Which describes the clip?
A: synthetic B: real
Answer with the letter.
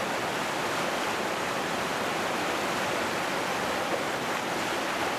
B